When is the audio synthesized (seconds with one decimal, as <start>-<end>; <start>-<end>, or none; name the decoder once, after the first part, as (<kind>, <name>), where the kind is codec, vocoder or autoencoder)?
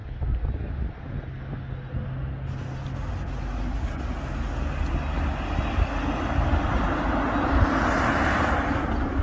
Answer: none